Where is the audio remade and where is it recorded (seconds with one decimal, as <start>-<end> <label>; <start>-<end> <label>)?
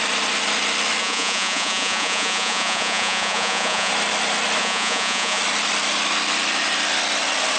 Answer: 0.0-1.0 recorded; 1.0-3.9 remade; 3.9-4.6 recorded; 4.6-5.4 remade; 5.4-7.6 recorded